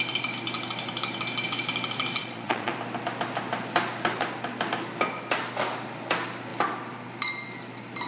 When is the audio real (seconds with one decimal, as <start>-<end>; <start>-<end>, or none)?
0.0-2.2; 2.7-8.1